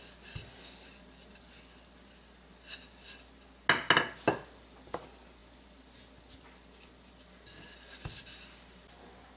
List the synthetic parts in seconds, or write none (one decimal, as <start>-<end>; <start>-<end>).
none